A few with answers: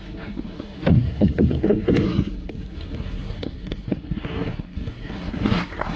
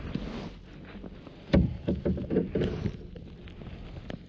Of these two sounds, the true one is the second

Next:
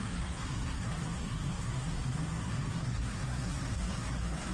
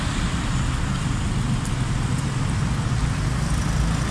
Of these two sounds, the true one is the second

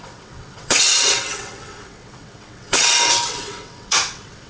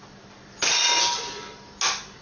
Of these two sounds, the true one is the second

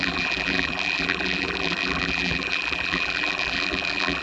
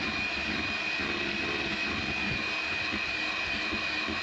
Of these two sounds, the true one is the second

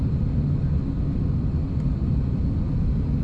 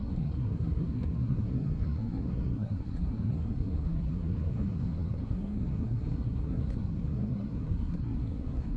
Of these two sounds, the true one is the first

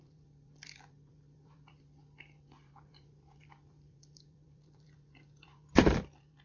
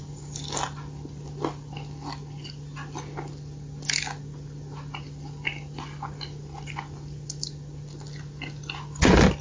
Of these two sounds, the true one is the second